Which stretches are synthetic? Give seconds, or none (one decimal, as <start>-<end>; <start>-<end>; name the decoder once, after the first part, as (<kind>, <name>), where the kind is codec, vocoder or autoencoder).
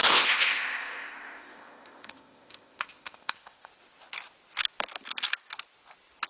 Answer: 0.0-3.7 (codec, ZipCodec)